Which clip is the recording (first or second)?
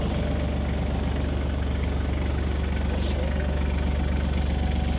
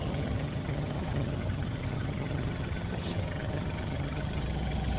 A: first